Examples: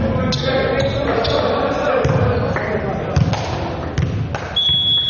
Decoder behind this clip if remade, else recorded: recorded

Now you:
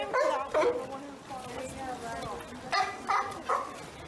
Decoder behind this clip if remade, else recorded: recorded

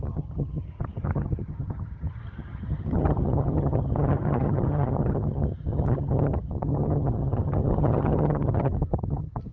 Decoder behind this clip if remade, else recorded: remade, vocoder, HiFi-GAN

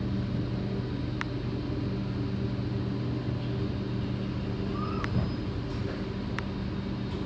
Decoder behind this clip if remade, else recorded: recorded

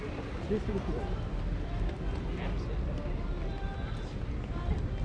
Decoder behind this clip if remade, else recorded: recorded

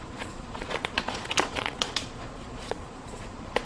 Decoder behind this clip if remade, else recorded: remade, vocoder, Vocos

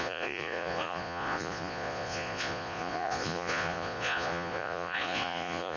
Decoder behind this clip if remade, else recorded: remade, vocoder, Vocos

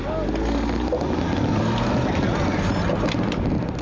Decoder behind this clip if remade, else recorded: recorded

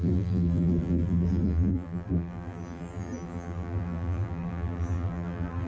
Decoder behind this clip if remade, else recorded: remade, vocoder, BigVGAN v2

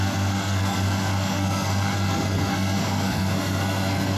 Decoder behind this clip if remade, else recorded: remade, codec, SNAC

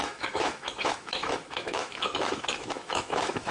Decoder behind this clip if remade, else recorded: remade, autoencoder, DAC-VAE